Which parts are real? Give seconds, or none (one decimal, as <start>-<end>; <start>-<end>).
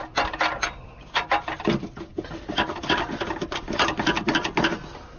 0.0-5.2